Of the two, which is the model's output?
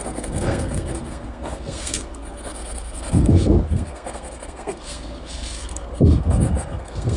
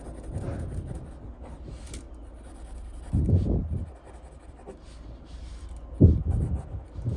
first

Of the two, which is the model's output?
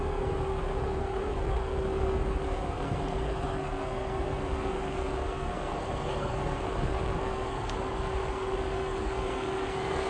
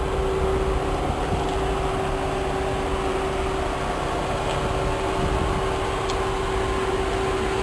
first